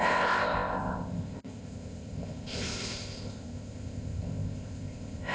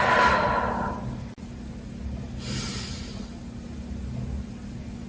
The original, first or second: second